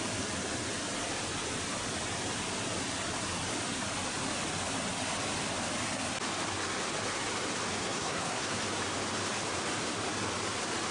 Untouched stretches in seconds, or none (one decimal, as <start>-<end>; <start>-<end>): 0.0-7.8; 8.6-10.9

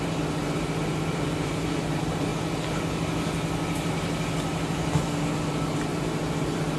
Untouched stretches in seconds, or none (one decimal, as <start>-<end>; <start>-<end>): 2.3-5.4

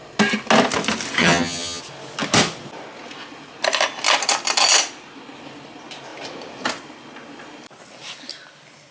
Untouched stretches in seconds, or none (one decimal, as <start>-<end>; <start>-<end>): 0.0-1.2; 1.8-8.9

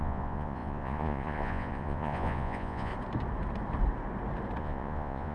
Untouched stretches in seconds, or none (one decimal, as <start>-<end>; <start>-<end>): 2.9-4.6

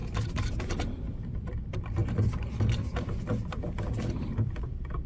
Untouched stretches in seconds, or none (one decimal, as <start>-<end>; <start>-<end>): 0.0-0.6; 2.0-4.2

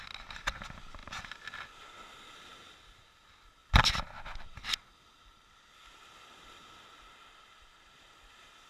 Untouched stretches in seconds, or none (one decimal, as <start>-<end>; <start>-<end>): 0.0-8.7